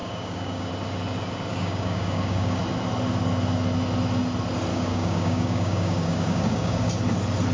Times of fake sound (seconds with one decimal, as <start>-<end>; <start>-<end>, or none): 0.0-0.7; 1.5-2.6; 4.7-6.9